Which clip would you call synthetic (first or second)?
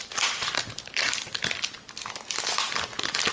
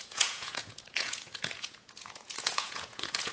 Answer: second